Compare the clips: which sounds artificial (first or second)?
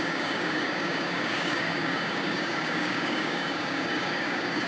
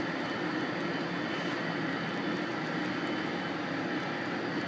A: first